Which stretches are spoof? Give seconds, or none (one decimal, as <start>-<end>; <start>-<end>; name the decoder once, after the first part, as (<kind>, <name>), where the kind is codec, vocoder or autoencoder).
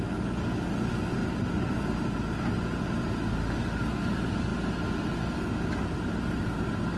none